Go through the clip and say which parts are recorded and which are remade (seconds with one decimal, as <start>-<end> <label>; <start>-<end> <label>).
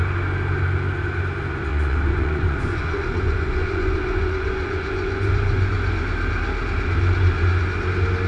0.0-1.7 recorded; 1.7-6.0 remade; 6.0-8.3 recorded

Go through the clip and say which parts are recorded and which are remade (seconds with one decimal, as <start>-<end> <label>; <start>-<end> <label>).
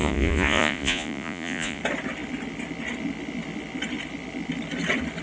0.0-1.8 remade; 1.8-5.2 recorded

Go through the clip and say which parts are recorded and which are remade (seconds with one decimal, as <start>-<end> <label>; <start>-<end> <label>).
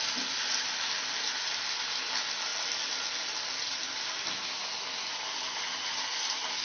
0.0-6.6 recorded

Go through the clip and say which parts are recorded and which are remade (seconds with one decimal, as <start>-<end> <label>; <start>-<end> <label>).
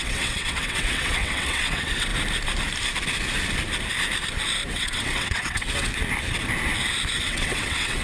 0.0-2.1 remade; 2.1-4.7 recorded; 4.7-5.9 remade; 5.9-7.2 recorded; 7.2-8.0 remade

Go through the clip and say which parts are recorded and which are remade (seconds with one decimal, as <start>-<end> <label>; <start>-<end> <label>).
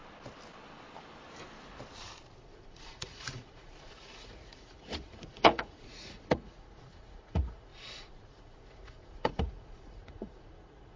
0.0-2.4 recorded; 2.4-11.0 remade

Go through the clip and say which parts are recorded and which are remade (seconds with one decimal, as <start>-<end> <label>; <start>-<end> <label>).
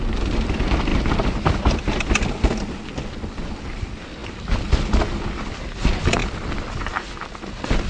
0.0-7.9 recorded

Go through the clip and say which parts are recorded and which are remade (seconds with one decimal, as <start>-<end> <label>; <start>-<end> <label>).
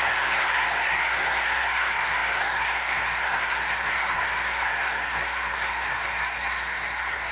0.0-7.3 remade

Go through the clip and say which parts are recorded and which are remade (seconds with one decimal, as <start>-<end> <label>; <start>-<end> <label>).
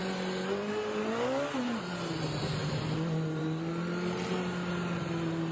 0.0-5.5 recorded